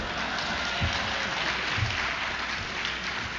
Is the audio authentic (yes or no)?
yes